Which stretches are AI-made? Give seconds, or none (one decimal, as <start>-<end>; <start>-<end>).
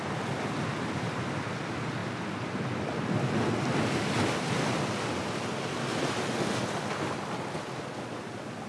none